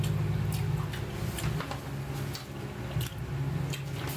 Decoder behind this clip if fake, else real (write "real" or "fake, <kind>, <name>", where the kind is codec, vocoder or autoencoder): real